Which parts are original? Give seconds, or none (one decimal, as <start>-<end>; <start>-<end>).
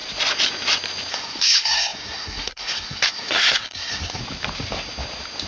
0.0-1.1; 4.2-5.5